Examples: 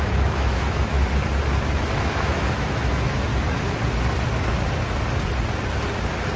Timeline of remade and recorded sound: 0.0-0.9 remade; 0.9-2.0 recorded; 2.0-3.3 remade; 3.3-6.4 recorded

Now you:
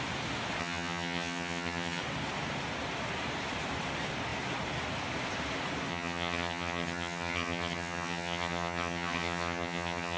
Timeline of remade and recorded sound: 0.0-0.6 recorded; 0.6-2.0 remade; 2.0-5.9 recorded; 5.9-10.2 remade